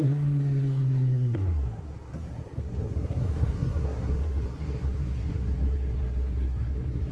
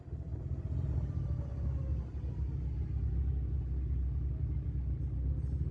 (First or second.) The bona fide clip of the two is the second